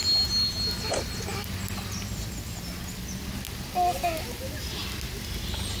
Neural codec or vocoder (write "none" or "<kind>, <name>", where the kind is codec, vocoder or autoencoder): none